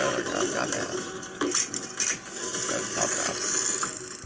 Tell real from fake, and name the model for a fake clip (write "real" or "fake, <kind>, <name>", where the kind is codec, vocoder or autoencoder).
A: real